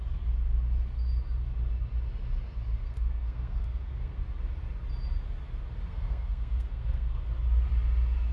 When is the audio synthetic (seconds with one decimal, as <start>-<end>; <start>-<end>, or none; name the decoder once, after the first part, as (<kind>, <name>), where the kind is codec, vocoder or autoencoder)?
2.8-4.2 (codec, SNAC); 5.9-7.2

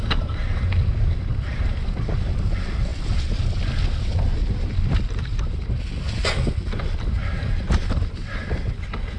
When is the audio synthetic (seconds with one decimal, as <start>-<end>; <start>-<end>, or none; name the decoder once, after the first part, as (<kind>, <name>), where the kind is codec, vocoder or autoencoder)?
2.9-3.4 (vocoder, BigVGAN v2); 4.4-5.8; 7.2-9.2

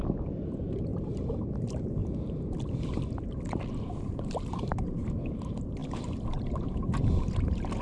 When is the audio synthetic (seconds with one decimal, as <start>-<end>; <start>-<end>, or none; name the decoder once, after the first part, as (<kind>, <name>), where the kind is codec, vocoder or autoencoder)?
0.0-0.9 (vocoder, BigVGAN v2); 1.6-2.0; 3.8-7.8

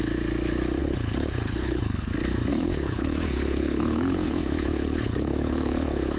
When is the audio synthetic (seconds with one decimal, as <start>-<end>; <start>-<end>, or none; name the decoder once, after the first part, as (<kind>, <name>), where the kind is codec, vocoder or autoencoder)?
0.8-2.1 (codec, HILCodec); 2.5-6.2

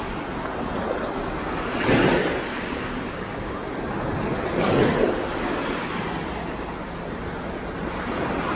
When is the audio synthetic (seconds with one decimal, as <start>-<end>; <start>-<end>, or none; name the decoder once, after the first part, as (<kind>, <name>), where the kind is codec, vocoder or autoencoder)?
2.5-3.6 (codec, DAC)

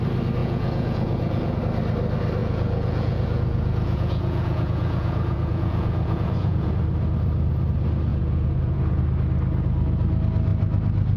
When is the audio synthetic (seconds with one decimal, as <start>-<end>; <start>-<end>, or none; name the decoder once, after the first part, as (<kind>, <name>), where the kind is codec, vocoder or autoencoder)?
0.4-1.6 (vocoder, Vocos); 2.4-6.7; 8.1-9.0